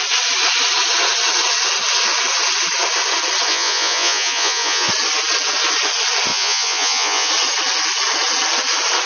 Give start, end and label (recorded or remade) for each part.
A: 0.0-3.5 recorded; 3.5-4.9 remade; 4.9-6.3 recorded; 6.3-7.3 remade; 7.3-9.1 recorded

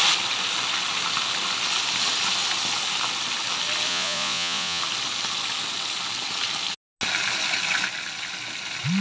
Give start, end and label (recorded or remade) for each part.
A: 0.0-3.9 recorded; 3.9-4.8 remade; 4.8-9.0 recorded

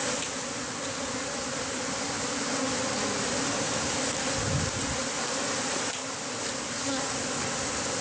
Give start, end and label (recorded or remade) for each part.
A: 0.0-1.8 remade; 1.8-8.0 recorded

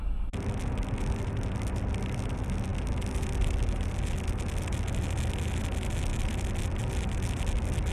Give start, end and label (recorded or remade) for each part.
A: 0.0-7.9 recorded

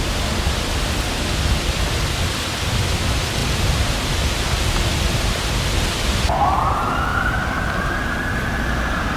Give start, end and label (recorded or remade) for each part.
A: 0.0-7.1 recorded; 7.1-7.9 remade; 7.9-9.2 recorded

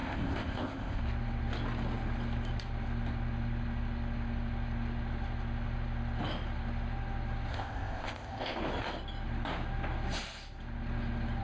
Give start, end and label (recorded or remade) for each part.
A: 0.0-1.0 remade; 1.0-7.5 recorded; 7.5-8.6 remade; 8.6-11.4 recorded

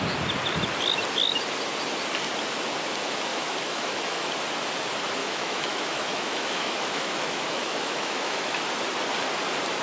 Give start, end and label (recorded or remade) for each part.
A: 0.0-3.3 recorded; 3.3-4.3 remade; 4.3-5.2 recorded; 5.2-8.6 remade; 8.6-9.8 recorded